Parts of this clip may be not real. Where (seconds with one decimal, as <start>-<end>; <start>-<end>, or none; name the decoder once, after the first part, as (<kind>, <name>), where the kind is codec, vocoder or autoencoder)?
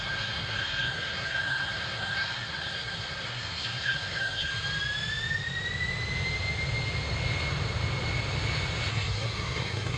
0.0-4.5 (codec, SNAC); 8.9-10.0